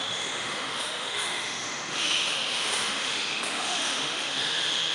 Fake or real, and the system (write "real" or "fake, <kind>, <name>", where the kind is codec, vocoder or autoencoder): fake, autoencoder, DAC-VAE